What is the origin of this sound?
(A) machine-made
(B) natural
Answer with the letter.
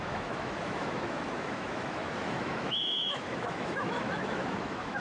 A